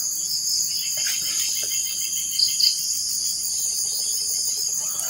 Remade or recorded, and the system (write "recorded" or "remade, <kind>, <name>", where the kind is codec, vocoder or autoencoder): recorded